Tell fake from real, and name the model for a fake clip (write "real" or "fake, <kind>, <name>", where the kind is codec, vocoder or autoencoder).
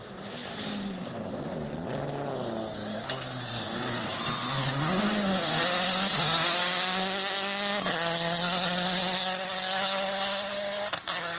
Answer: real